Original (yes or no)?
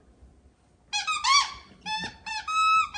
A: yes